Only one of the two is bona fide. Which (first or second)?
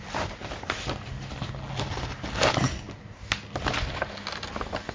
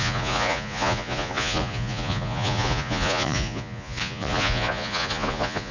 first